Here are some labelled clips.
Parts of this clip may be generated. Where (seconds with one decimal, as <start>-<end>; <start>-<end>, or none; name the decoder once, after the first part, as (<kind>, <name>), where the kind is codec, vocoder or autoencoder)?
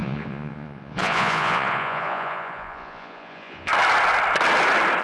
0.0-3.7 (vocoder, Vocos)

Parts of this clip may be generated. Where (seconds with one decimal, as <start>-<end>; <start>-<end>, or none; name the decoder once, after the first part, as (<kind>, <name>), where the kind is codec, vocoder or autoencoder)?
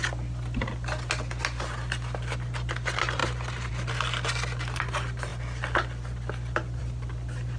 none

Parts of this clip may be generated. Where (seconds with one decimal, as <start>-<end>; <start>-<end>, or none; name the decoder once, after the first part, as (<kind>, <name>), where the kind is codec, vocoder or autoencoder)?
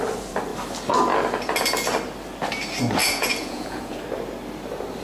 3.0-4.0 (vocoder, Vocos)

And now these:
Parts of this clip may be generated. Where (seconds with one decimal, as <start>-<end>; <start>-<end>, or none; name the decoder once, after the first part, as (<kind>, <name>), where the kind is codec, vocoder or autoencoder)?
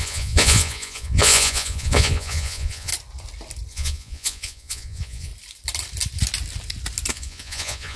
0.0-2.9 (vocoder, Vocos); 3.7-5.3; 7.1-8.0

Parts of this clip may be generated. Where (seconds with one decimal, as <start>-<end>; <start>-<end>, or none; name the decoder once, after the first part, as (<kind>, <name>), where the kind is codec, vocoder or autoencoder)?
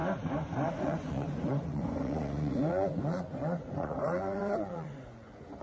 0.7-5.6 (vocoder, Vocos)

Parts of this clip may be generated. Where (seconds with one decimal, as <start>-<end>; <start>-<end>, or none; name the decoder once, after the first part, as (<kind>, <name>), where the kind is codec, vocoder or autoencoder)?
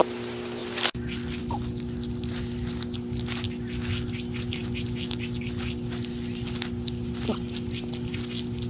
none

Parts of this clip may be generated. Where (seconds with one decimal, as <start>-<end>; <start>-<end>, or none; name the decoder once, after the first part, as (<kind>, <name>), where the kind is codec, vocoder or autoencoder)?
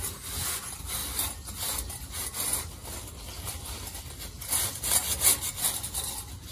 none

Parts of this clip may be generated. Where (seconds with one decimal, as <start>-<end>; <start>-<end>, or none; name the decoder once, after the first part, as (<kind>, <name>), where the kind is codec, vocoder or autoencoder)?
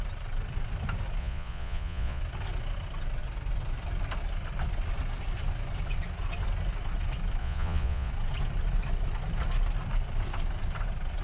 1.2-2.2 (vocoder, Vocos); 7.4-8.1